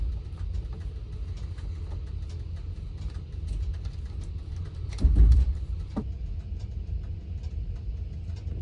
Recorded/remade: recorded